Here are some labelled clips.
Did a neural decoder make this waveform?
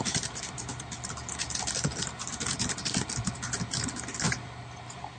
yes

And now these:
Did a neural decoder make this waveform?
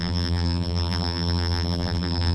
yes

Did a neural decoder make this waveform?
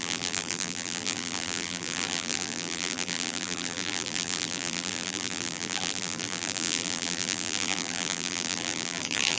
yes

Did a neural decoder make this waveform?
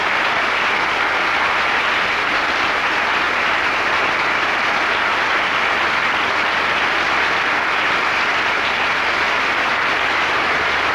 no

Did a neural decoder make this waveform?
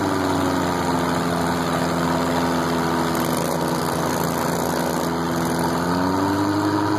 no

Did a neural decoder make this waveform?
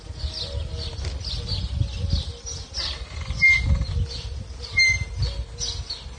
no